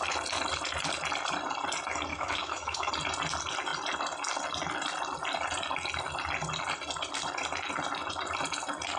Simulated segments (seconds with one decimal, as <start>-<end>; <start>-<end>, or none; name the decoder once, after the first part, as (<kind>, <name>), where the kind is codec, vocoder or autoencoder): 2.1-2.9 (autoencoder, DAC-VAE)

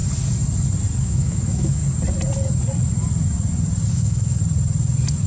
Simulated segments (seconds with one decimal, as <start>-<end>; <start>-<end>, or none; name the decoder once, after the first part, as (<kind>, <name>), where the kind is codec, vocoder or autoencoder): 1.0-1.8 (autoencoder, DAC-VAE); 3.9-4.4

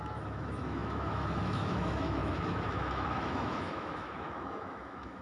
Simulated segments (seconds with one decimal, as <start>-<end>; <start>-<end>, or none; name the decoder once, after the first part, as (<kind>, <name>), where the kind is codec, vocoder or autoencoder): 0.0-5.2 (autoencoder, DAC-VAE)